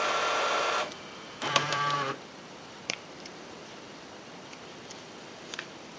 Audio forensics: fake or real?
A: fake